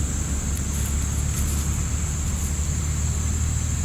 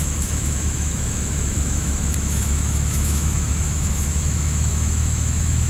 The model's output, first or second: second